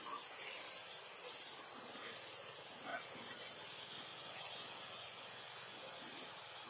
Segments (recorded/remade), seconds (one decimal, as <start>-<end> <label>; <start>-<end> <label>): 0.0-2.9 recorded; 2.9-3.5 remade; 3.5-4.1 recorded; 4.1-6.1 remade; 6.1-6.7 recorded